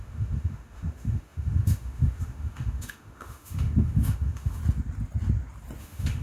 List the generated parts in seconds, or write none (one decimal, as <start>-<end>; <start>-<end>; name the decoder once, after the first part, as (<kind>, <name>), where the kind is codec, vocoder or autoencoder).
0.0-4.6 (autoencoder, DAC-VAE); 5.8-6.2